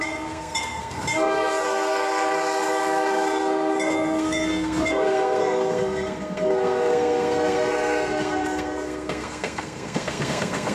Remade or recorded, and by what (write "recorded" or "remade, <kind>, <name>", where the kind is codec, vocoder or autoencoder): remade, codec, SNAC